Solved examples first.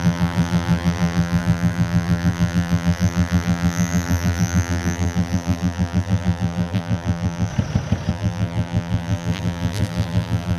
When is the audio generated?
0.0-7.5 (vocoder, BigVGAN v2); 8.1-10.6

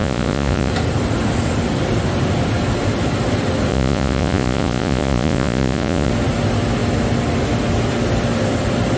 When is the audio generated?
0.0-0.7 (vocoder, Vocos); 3.7-6.1

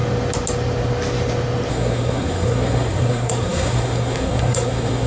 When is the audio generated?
1.7-5.1 (codec, SNAC)

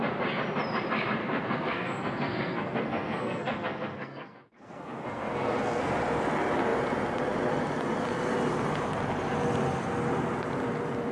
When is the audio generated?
1.2-5.8 (codec, SNAC)